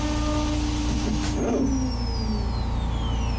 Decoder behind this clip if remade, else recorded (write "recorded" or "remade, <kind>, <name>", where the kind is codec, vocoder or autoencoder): recorded